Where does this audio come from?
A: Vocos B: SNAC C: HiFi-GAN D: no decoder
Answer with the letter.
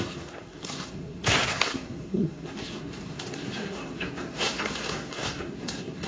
B